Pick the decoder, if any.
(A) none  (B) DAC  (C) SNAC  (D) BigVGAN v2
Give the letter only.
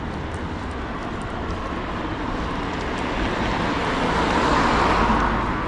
A